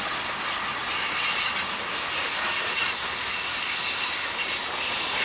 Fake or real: real